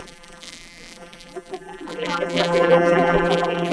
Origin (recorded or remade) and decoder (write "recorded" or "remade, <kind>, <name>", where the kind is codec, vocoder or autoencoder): remade, vocoder, BigVGAN v2